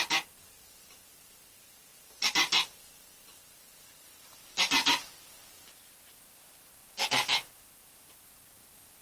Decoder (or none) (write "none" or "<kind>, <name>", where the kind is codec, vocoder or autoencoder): none